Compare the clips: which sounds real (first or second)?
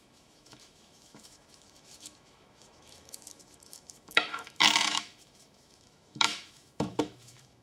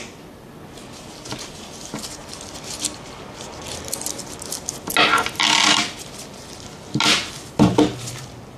second